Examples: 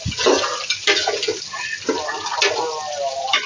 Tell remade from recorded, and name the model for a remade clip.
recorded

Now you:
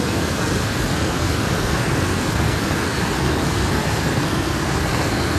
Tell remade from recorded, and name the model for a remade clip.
remade, codec, SNAC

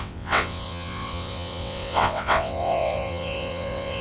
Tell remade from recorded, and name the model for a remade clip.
remade, vocoder, WaveNeXt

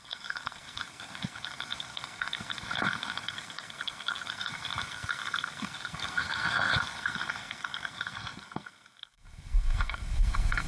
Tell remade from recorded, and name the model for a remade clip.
remade, codec, SNAC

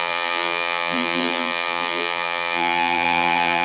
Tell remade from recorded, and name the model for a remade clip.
remade, vocoder, BigVGAN v2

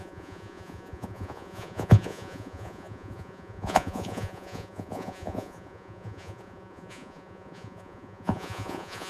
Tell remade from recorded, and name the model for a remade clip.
remade, vocoder, Vocos